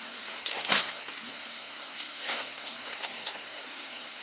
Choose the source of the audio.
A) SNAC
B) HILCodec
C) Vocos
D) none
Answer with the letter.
A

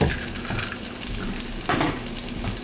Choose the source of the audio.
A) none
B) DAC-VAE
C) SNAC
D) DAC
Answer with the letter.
A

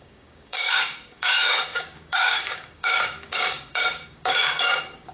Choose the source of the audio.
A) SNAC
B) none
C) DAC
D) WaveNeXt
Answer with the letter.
C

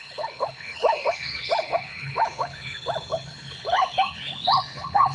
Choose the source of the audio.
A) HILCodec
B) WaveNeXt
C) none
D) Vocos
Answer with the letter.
A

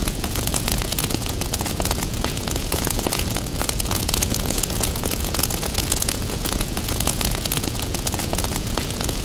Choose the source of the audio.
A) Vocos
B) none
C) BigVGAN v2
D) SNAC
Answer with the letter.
A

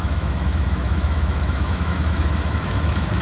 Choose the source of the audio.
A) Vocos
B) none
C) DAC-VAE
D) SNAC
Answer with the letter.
C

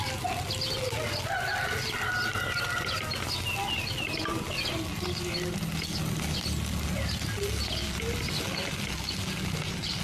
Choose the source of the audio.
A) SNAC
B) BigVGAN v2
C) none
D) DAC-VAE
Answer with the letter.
C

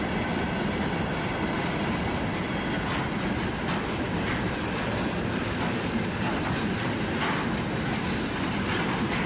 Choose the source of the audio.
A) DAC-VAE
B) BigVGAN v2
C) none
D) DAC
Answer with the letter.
C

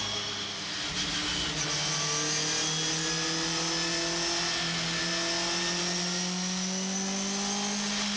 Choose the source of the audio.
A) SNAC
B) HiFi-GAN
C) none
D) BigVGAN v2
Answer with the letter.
C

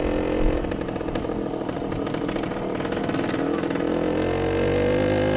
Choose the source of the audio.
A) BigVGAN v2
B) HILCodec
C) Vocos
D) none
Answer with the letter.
D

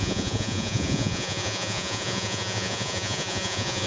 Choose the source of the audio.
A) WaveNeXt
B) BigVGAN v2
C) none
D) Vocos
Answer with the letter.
D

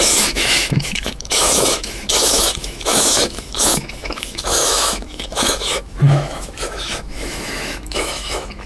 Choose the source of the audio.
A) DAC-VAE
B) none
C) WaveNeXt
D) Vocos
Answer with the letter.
A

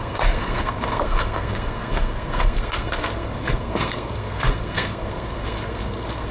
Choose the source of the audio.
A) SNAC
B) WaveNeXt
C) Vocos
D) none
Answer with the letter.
A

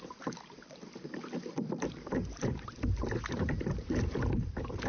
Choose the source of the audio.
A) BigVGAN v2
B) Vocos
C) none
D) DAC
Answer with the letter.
A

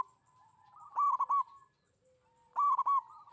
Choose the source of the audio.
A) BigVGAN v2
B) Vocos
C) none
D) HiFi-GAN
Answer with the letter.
C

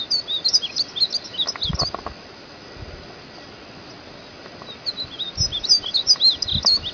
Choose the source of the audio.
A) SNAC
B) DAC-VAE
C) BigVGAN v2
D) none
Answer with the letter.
D